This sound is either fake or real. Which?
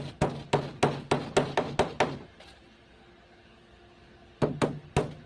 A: real